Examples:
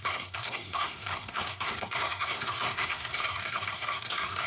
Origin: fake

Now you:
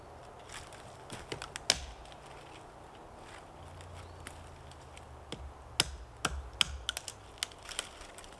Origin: real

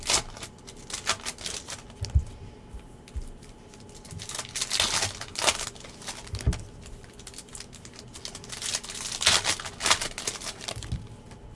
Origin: real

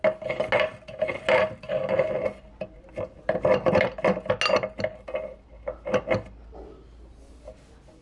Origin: real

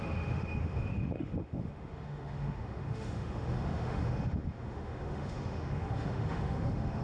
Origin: fake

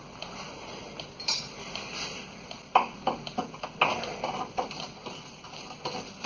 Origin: real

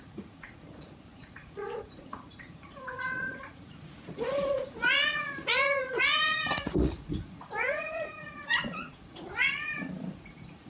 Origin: fake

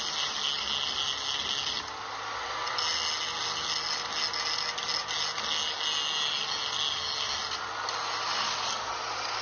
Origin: real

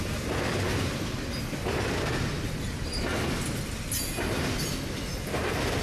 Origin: real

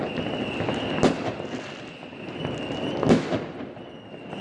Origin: real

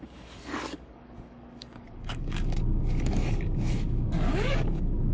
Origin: fake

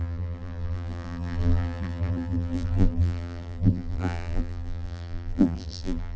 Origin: fake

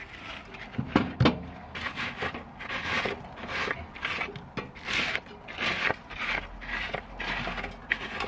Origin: real